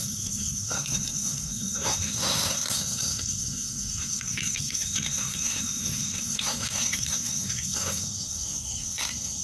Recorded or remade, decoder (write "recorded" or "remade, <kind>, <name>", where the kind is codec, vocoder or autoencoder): remade, codec, SNAC